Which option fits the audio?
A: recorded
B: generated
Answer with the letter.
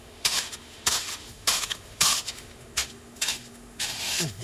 B